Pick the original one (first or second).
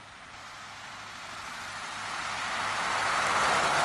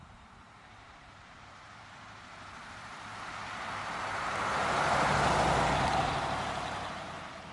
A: first